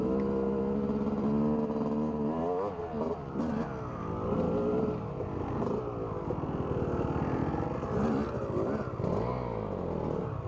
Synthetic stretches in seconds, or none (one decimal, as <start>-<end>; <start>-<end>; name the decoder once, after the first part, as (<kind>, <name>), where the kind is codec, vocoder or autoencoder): none